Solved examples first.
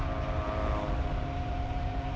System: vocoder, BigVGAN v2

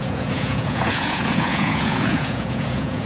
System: vocoder, Vocos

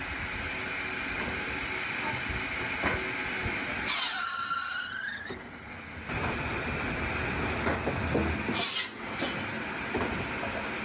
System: none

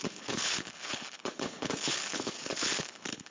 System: codec, HILCodec